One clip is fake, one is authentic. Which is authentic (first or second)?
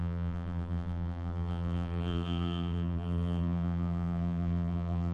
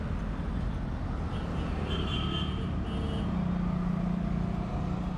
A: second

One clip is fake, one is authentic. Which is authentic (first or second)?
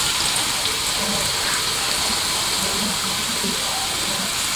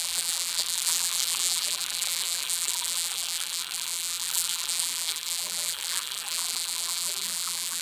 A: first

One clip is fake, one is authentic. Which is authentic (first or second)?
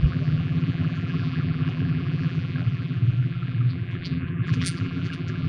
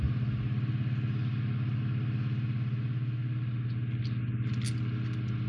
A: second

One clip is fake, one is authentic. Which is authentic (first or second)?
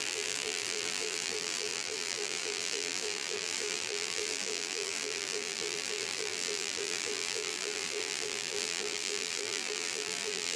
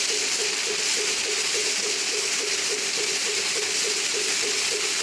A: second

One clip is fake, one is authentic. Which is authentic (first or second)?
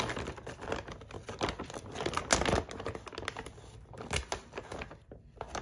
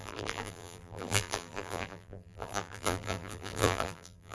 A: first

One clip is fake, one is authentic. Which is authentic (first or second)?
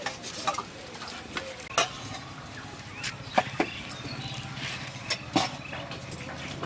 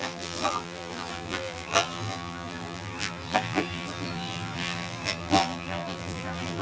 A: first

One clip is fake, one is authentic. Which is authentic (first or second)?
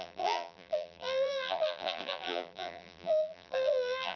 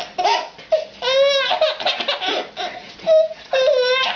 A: second